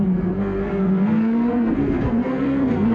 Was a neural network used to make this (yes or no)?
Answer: yes